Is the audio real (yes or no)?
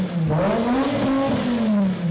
yes